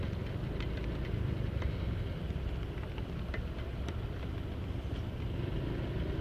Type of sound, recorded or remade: recorded